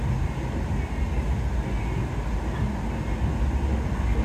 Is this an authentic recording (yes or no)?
yes